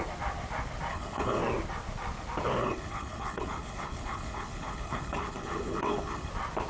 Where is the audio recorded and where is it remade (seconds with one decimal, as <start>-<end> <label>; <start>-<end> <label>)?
0.0-0.9 recorded; 0.9-1.4 remade; 1.4-2.6 recorded; 2.6-6.3 remade; 6.3-6.7 recorded